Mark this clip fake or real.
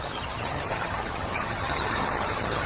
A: fake